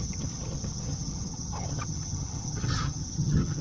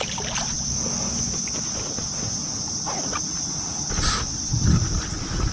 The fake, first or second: first